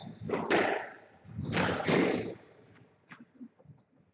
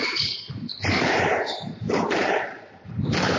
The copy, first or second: second